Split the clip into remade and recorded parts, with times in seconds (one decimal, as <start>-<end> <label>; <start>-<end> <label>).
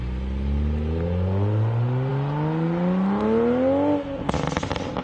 0.0-5.0 recorded